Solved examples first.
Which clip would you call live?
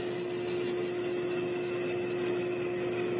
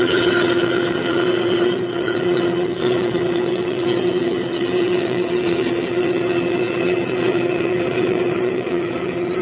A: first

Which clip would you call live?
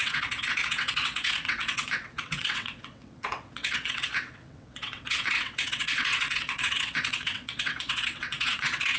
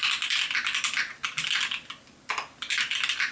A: second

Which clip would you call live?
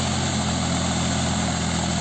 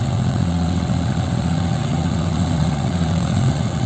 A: first